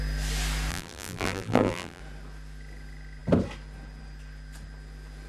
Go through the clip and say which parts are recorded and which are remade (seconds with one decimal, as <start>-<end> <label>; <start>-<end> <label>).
0.0-0.7 recorded; 0.7-2.0 remade; 2.0-5.3 recorded